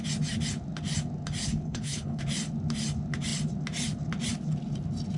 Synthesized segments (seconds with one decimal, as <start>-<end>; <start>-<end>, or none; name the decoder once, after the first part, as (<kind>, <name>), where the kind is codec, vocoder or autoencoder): 1.4-2.2 (codec, HILCodec)